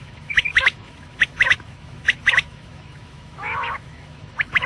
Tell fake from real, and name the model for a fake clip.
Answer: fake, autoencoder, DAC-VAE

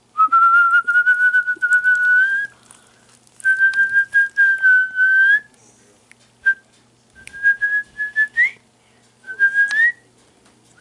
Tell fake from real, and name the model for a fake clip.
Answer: real